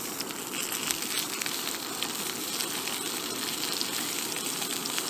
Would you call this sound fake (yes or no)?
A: no